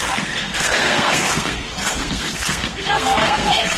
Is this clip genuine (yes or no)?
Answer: no